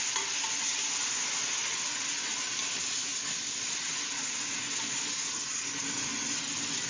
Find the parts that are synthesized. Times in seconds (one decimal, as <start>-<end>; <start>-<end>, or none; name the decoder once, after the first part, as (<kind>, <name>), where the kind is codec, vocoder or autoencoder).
none